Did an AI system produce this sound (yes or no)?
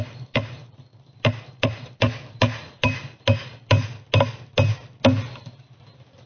no